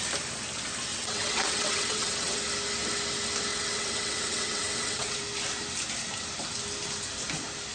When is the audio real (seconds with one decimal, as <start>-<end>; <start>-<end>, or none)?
0.0-0.9; 2.4-3.5; 5.2-7.7